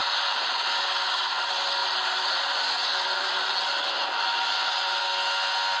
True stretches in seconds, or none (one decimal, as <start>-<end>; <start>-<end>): 0.6-1.8; 2.4-2.9; 5.0-5.8